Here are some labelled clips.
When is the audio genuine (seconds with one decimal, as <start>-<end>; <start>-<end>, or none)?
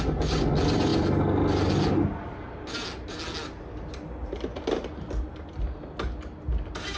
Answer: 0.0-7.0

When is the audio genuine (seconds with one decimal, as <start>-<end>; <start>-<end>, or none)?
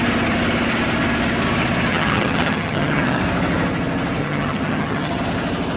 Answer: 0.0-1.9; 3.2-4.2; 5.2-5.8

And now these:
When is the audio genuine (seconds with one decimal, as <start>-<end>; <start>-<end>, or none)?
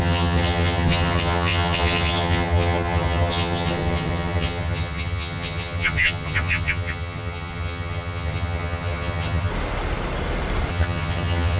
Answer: 9.5-10.7